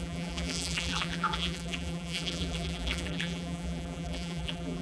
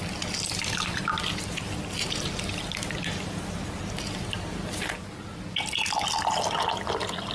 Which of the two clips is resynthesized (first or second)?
first